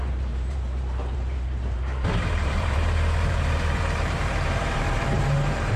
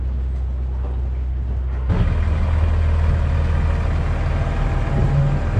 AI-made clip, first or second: first